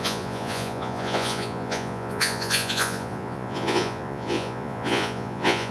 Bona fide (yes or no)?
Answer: no